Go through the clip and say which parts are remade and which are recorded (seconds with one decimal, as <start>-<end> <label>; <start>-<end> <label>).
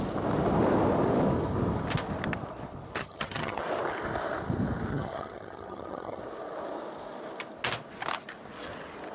0.0-3.0 recorded; 3.0-3.6 remade; 3.6-4.9 recorded; 4.9-6.2 remade; 6.2-9.1 recorded